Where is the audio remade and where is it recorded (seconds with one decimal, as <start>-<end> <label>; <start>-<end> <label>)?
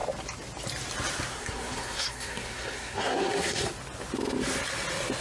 0.0-1.3 recorded; 1.3-3.7 remade; 3.7-5.2 recorded